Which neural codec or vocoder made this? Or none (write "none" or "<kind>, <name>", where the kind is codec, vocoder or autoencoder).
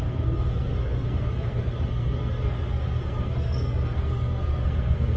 codec, SNAC